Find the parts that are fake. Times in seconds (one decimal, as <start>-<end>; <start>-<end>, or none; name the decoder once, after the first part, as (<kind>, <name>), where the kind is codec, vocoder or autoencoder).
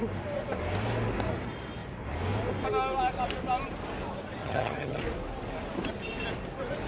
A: 4.4-5.0 (vocoder, HiFi-GAN)